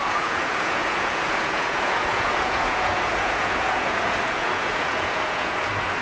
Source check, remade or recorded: remade